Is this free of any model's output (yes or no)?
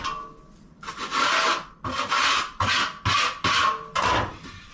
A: yes